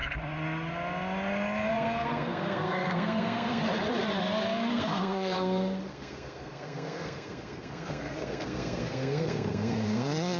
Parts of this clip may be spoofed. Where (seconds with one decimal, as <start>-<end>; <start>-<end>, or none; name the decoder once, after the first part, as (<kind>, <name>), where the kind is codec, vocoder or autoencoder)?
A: 1.7-3.6 (codec, SNAC); 4.7-10.4